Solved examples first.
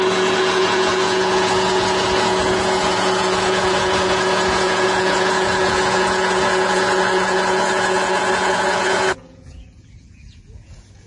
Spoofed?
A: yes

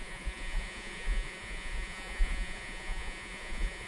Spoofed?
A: yes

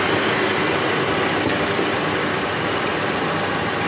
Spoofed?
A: no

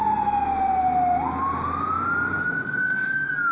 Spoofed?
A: no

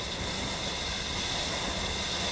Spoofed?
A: no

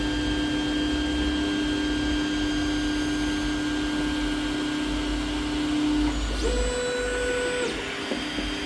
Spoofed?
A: no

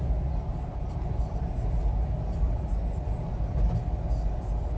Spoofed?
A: no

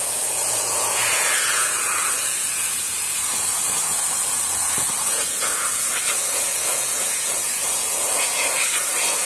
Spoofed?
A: yes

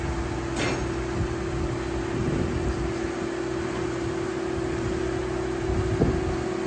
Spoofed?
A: no